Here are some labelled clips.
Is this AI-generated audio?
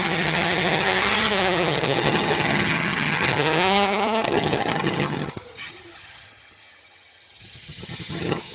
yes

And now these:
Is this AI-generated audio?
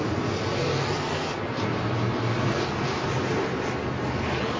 no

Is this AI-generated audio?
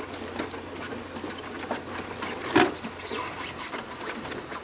no